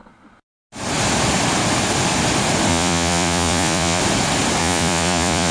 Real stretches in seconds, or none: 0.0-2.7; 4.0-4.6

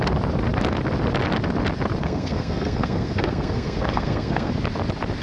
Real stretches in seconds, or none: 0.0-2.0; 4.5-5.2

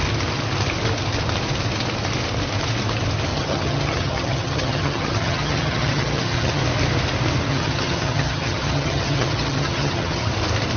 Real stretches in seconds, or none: 0.0-3.3; 6.6-7.5; 10.3-10.8

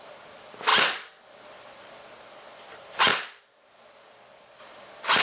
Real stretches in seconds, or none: 0.0-5.2